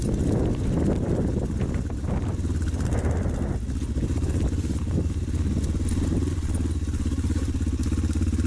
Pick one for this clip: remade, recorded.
recorded